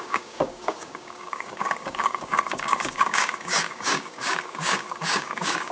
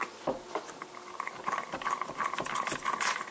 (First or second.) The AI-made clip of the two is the first